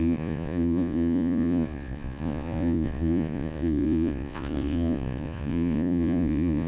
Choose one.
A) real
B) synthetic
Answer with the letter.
B